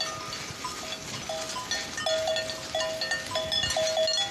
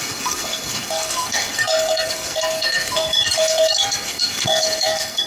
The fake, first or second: second